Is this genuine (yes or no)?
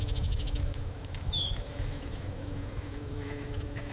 no